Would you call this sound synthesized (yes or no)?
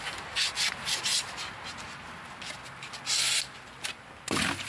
no